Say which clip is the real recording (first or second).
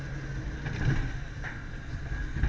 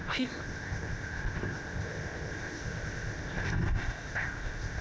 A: first